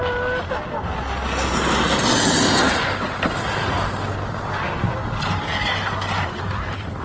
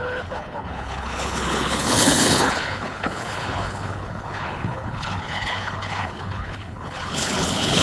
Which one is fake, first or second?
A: second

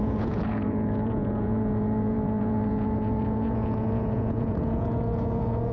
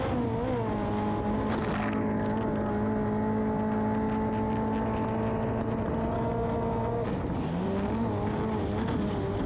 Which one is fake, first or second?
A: first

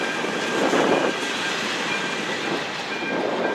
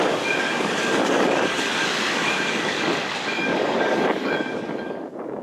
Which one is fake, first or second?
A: second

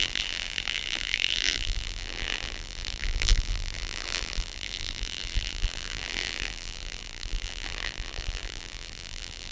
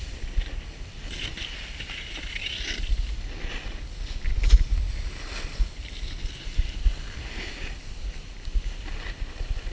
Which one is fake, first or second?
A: first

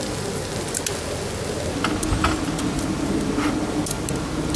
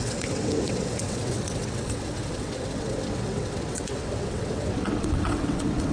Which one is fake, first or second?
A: second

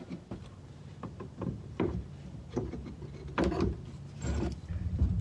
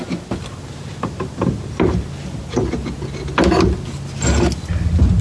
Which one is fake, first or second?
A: first